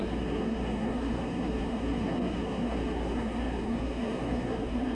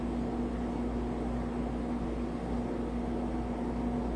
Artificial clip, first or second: first